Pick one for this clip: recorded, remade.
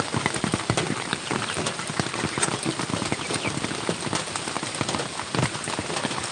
recorded